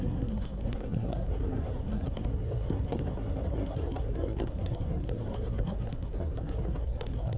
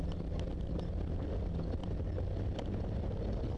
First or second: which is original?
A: second